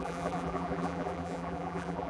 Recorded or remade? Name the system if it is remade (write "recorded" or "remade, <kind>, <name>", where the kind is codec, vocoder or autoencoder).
remade, vocoder, BigVGAN v2